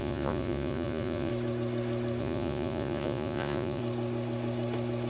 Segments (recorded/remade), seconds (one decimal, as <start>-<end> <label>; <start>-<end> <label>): 0.0-1.3 remade; 1.3-2.2 recorded; 2.2-3.8 remade; 3.8-5.1 recorded